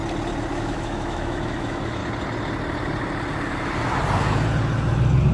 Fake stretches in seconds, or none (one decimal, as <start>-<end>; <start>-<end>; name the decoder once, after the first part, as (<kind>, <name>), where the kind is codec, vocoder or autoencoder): 0.5-2.0 (autoencoder, DAC-VAE)